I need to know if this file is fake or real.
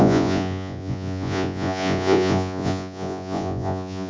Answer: fake